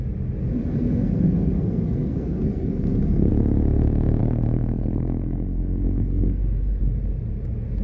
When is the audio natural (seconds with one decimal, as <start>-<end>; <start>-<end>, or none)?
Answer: 0.0-0.5; 3.3-4.2; 6.8-7.8